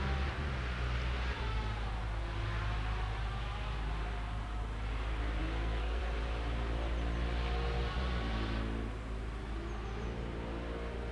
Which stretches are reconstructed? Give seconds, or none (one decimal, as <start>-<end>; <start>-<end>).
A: 5.4-6.0